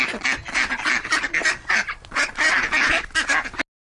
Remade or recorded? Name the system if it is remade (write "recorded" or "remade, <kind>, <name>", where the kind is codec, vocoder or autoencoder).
recorded